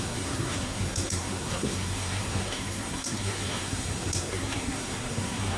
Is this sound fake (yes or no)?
yes